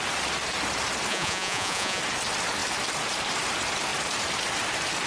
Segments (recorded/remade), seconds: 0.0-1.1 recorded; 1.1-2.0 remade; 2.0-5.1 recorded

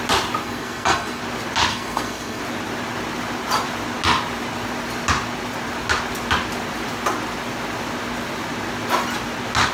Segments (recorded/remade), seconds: 0.0-0.4 recorded; 0.4-1.2 remade; 1.2-1.7 recorded; 1.7-2.4 remade; 2.4-9.7 recorded

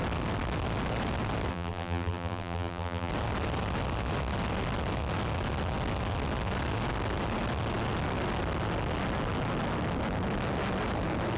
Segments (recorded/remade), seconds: 0.0-1.5 recorded; 1.5-3.1 remade; 3.1-11.4 recorded

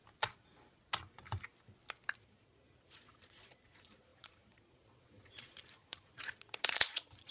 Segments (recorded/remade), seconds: 0.0-2.2 recorded; 2.2-7.3 remade